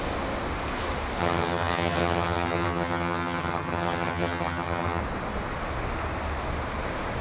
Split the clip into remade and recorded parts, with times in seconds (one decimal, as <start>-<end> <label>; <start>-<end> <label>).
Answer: 0.0-1.2 recorded; 1.2-5.0 remade; 5.0-7.2 recorded

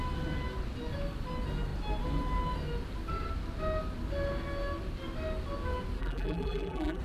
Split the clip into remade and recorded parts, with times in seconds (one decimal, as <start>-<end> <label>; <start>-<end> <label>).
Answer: 0.0-6.0 recorded; 6.0-7.0 remade